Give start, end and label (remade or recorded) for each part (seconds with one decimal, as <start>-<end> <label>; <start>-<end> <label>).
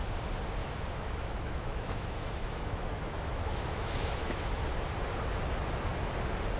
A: 0.0-0.6 recorded; 0.6-4.5 remade; 4.5-6.6 recorded